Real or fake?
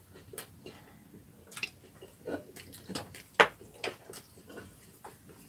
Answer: real